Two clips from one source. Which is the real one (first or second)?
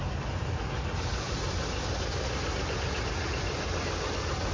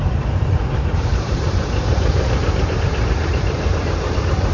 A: first